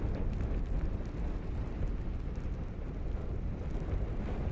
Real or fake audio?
real